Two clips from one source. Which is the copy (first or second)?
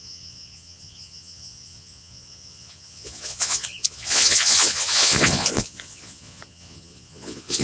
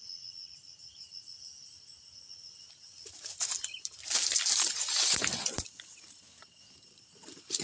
first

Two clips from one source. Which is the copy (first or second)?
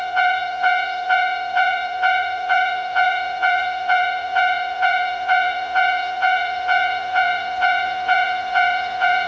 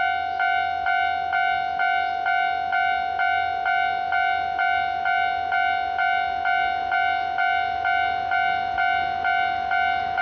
first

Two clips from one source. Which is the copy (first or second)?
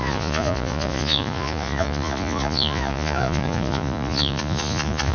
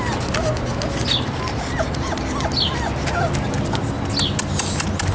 first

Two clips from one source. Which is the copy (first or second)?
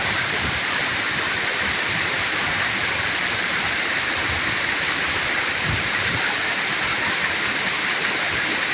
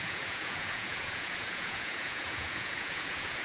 second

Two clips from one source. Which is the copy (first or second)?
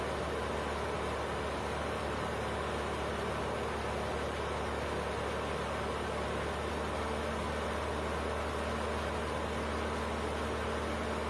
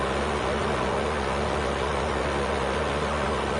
second